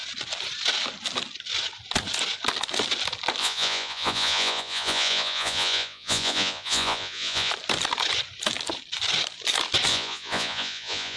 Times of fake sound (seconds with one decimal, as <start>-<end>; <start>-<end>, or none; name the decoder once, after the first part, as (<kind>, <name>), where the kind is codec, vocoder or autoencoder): 3.4-7.5 (vocoder, Vocos); 9.9-11.2